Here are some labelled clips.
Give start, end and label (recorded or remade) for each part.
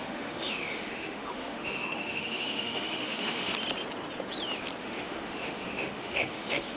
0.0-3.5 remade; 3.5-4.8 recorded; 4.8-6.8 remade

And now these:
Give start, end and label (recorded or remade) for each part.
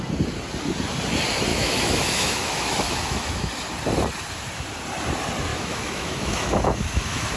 0.0-1.5 recorded; 1.5-3.5 remade; 3.5-5.5 recorded; 5.5-7.4 remade